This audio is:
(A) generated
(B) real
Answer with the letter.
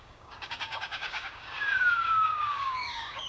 A